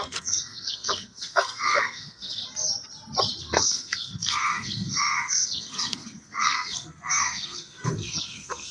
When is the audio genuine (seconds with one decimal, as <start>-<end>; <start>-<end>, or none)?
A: 2.4-3.4